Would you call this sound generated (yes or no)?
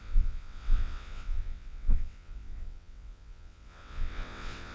yes